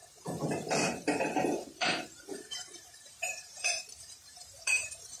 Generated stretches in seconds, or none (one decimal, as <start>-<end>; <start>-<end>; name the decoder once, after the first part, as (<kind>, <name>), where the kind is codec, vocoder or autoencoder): 0.0-5.2 (vocoder, BigVGAN v2)